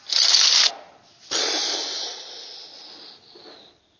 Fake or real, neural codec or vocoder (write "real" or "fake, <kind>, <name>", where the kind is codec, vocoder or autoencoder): real